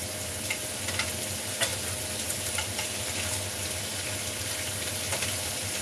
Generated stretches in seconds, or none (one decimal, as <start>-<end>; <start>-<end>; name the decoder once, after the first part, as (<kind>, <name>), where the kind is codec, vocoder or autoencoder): none